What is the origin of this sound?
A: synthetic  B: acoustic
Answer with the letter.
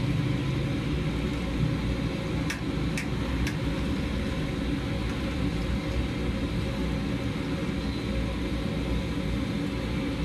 B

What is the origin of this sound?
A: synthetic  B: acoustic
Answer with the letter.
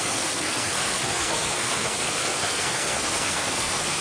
A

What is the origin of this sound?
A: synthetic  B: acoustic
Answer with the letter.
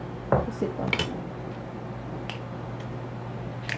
B